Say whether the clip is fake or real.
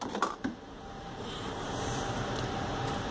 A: fake